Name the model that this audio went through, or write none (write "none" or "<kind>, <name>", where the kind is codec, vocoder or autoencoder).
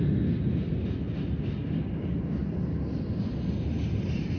none